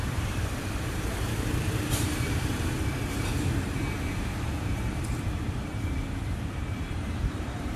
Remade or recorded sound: remade